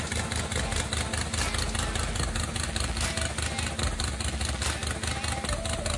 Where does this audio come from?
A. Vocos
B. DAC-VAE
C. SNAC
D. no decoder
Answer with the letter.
D